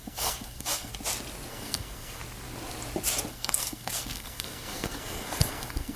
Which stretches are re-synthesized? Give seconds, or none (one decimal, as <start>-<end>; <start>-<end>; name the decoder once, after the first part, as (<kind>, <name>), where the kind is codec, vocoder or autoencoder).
0.0-0.9 (codec, SNAC); 1.5-2.2; 3.3-6.0